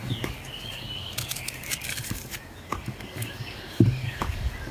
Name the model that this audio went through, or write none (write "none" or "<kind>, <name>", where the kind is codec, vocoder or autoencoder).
codec, DAC